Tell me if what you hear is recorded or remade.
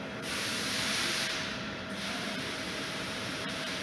remade